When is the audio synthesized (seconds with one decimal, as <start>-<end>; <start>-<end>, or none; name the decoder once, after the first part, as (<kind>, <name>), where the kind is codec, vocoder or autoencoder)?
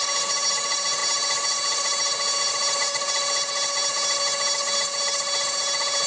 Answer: none